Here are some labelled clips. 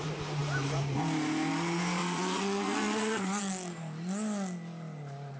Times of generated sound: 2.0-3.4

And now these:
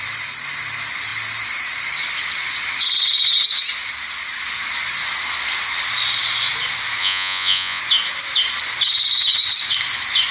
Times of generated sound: 7.0-7.8

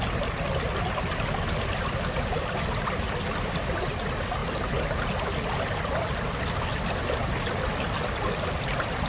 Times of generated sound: none

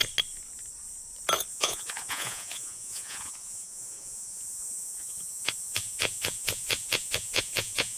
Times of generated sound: 1.5-8.0